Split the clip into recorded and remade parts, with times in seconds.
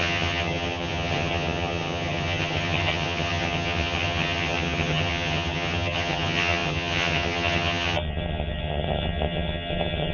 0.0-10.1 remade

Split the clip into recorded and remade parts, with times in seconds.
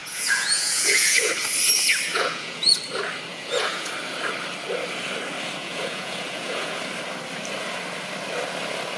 0.0-1.3 remade; 1.3-2.1 recorded; 2.1-2.8 remade; 2.8-3.3 recorded; 3.3-3.9 remade; 3.9-5.6 recorded; 5.6-6.8 remade; 6.8-9.0 recorded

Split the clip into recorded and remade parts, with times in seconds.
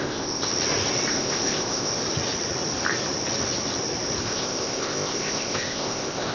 0.0-0.5 remade; 0.5-1.1 recorded; 1.1-1.9 remade; 1.9-4.2 recorded; 4.2-6.3 remade